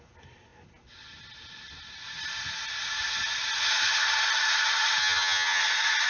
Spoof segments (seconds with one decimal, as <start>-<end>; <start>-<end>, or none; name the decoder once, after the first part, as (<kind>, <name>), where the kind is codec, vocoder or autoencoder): 5.0-5.6 (vocoder, HiFi-GAN)